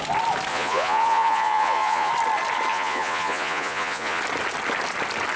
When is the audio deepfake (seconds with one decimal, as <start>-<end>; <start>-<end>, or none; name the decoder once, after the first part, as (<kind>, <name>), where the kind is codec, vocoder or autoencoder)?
0.5-2.1 (vocoder, Vocos); 2.7-4.2